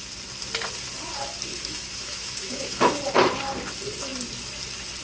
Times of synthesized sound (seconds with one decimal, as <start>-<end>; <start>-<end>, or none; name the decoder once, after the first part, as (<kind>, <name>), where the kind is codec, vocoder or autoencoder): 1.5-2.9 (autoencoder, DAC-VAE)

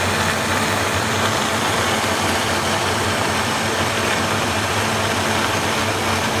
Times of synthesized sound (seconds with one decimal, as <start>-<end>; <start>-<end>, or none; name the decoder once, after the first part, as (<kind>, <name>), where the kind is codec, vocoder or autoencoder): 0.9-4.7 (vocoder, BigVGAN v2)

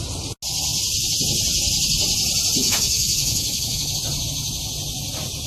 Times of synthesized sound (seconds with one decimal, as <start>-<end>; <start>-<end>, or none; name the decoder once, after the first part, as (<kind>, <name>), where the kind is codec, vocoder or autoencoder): 2.6-3.9 (autoencoder, DAC-VAE)

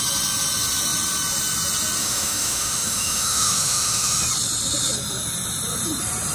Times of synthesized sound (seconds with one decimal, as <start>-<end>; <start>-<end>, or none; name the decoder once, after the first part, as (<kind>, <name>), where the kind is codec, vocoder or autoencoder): 2.0-4.2 (autoencoder, DAC-VAE)

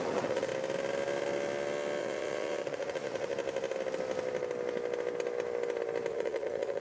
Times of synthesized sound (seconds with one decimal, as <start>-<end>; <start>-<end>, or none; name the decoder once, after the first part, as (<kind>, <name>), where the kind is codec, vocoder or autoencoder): 0.0-0.5 (vocoder, Vocos); 2.0-3.3; 6.1-6.8

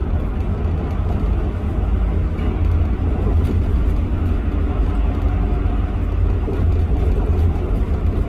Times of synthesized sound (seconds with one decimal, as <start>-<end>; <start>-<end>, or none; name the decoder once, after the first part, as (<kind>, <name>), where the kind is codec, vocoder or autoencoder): none

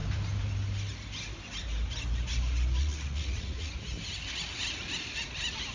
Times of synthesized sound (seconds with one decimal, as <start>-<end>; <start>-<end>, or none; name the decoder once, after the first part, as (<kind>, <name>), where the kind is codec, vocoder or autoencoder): 2.8-3.7 (vocoder, Vocos)